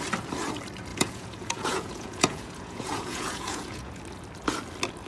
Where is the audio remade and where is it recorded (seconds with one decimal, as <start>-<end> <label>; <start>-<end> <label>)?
0.0-0.9 recorded; 0.9-4.0 remade; 4.0-5.1 recorded